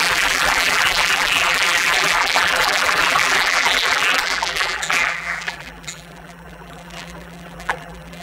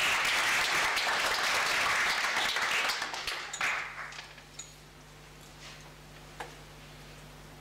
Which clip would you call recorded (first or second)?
second